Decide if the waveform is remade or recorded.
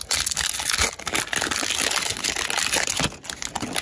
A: recorded